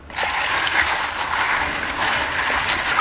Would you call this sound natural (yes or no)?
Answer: yes